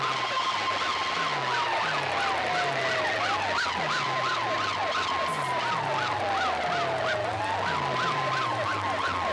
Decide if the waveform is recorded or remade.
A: recorded